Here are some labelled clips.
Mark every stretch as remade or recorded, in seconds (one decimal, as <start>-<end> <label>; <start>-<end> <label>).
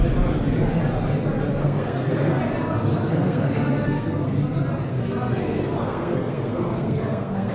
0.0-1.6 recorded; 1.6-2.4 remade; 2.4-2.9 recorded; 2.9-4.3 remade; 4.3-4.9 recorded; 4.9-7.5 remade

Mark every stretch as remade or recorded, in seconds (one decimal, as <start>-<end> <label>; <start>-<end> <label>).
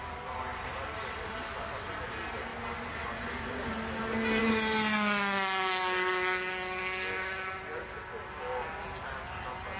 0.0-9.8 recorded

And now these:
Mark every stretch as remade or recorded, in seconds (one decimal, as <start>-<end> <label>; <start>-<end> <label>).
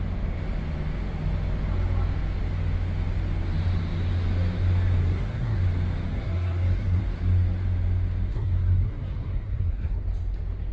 0.0-5.0 recorded; 5.0-5.6 remade; 5.6-6.1 recorded; 6.1-7.0 remade; 7.0-8.3 recorded; 8.3-10.0 remade; 10.0-10.7 recorded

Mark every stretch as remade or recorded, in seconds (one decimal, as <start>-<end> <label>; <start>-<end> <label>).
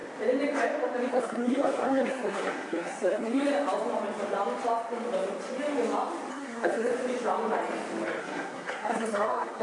0.0-1.1 recorded; 1.1-3.5 remade; 3.5-6.3 recorded; 6.3-6.9 remade; 6.9-8.2 recorded; 8.2-9.6 remade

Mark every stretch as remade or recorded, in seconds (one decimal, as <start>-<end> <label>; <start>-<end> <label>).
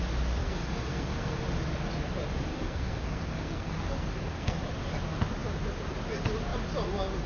0.0-0.4 recorded; 0.4-1.4 remade; 1.4-2.5 recorded; 2.5-4.6 remade; 4.6-7.3 recorded